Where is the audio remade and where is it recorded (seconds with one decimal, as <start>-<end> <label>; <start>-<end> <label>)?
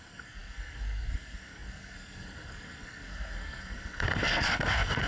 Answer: 0.0-5.1 remade